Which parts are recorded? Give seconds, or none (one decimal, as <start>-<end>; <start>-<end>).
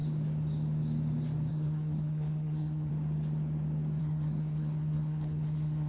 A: 0.0-1.5; 2.9-4.0